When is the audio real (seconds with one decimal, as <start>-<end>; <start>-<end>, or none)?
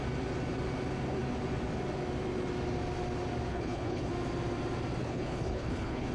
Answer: 0.0-3.5; 4.1-5.0